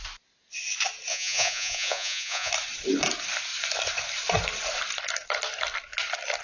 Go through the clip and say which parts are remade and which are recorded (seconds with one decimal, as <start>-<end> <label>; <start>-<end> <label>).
0.0-1.1 recorded; 1.1-2.5 remade; 2.5-6.4 recorded